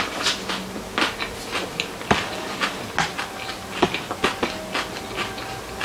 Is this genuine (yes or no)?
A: yes